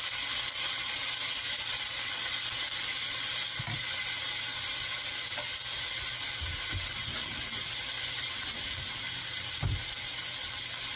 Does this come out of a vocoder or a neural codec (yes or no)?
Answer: no